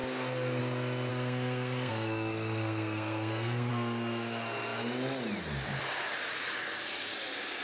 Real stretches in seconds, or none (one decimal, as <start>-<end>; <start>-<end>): 0.0-1.1; 3.7-7.6